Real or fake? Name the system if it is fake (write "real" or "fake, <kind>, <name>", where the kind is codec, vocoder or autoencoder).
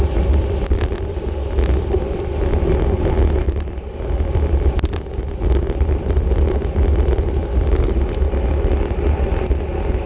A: real